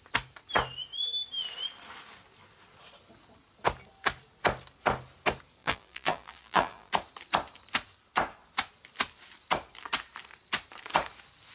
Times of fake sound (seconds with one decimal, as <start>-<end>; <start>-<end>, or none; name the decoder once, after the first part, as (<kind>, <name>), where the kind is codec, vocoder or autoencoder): 5.6-6.9 (vocoder, BigVGAN v2)